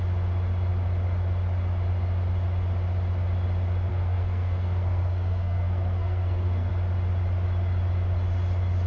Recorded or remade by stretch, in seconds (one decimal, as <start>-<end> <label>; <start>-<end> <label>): 0.0-3.9 recorded; 3.9-6.7 remade; 6.7-8.9 recorded

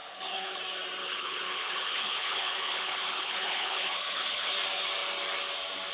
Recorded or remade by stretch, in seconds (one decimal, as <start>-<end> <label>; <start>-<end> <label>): 0.0-0.6 remade; 0.6-1.0 recorded; 1.0-4.5 remade; 4.5-5.9 recorded

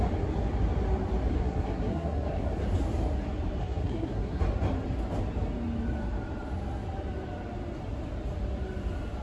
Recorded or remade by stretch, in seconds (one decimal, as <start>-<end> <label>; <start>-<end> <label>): 0.0-1.3 recorded; 1.3-2.5 remade; 2.5-3.6 recorded; 3.6-4.4 remade; 4.4-9.2 recorded